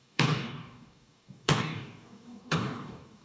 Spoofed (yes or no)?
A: yes